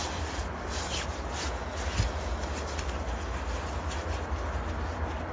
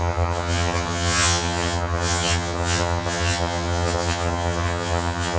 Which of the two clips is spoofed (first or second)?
second